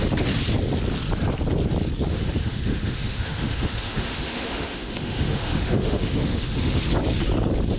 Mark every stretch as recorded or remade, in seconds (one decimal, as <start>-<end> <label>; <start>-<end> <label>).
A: 0.0-2.1 recorded; 2.1-6.8 remade; 6.8-7.8 recorded